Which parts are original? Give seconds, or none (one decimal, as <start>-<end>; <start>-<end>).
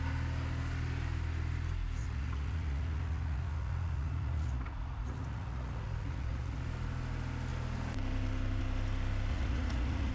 0.0-2.0; 6.6-9.3